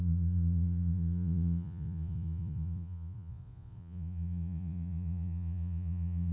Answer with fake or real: fake